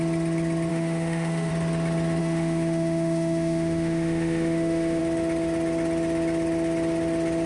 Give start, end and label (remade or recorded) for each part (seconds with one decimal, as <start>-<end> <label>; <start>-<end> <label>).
0.0-0.7 recorded; 0.7-1.5 remade; 1.5-2.2 recorded; 2.2-5.0 remade; 5.0-7.5 recorded